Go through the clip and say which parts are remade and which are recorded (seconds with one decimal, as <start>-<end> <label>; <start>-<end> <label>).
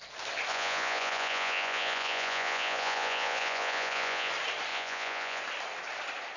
0.0-0.5 recorded; 0.5-4.3 remade; 4.3-4.7 recorded; 4.7-5.4 remade; 5.4-6.4 recorded